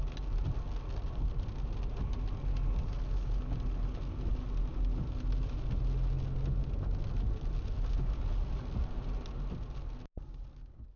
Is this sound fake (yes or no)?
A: no